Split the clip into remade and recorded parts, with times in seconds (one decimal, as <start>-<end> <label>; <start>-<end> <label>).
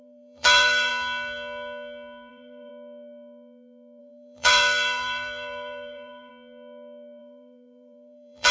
0.0-0.9 remade; 0.9-2.3 recorded; 2.3-2.7 remade; 2.7-4.0 recorded; 4.0-6.3 remade; 6.3-7.2 recorded; 7.2-8.5 remade